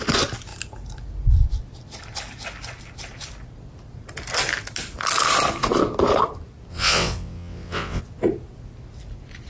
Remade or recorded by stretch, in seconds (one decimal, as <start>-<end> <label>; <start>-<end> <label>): 0.0-6.7 recorded; 6.7-8.0 remade; 8.0-9.5 recorded